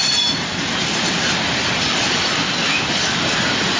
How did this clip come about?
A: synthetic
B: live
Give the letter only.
B